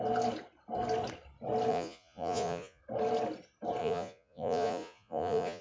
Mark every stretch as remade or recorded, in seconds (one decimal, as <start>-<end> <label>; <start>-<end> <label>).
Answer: 0.0-1.7 recorded; 1.7-2.8 remade; 2.8-3.8 recorded; 3.8-5.6 remade